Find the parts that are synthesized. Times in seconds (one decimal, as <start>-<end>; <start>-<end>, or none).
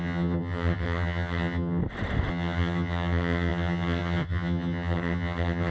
0.0-1.8; 2.3-5.7